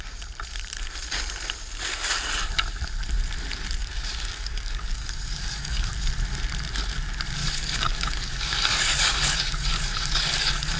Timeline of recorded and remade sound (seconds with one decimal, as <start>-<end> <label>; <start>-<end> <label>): 0.0-3.8 recorded; 3.8-5.9 remade; 5.9-7.4 recorded; 7.4-10.8 remade